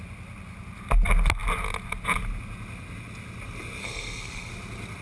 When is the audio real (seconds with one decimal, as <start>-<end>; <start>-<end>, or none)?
0.0-3.8; 4.5-5.0